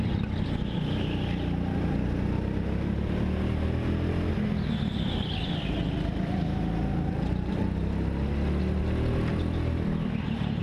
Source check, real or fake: real